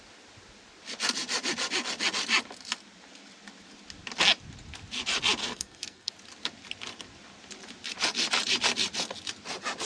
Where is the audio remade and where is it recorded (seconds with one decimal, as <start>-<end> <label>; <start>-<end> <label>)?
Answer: 0.0-5.4 recorded; 5.4-6.1 remade; 6.1-9.9 recorded